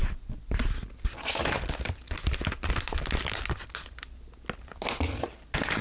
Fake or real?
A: real